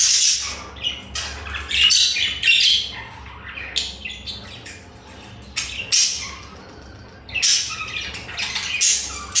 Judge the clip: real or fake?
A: real